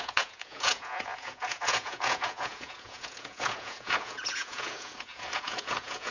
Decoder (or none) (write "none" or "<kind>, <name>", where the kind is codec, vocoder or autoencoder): vocoder, Vocos